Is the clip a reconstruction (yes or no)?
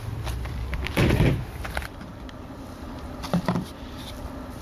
yes